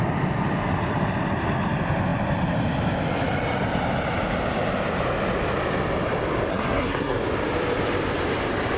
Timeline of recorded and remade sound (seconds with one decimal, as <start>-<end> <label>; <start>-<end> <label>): 0.0-6.5 recorded; 6.5-7.2 remade; 7.2-8.8 recorded